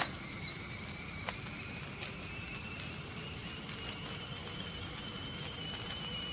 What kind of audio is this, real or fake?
real